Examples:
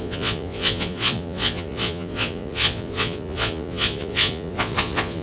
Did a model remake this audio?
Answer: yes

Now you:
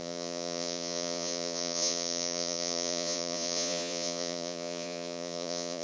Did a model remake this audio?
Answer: yes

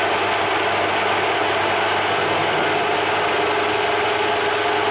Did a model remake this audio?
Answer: no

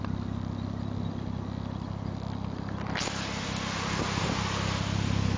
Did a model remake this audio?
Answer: no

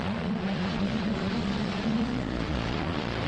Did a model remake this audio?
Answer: yes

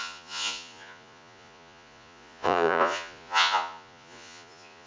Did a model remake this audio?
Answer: yes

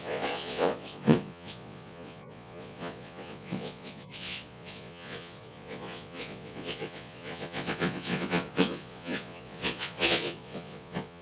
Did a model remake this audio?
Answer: yes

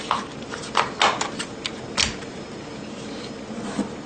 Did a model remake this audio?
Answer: no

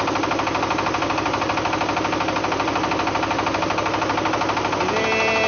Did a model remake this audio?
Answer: no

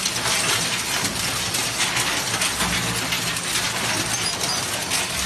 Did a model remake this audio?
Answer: no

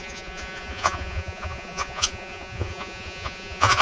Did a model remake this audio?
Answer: yes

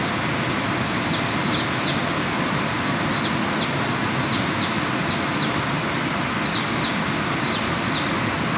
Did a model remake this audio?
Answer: no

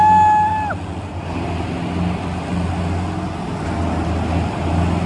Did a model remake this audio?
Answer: no